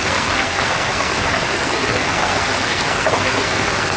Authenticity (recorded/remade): remade